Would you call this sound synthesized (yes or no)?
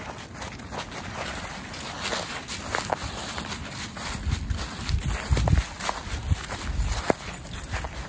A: no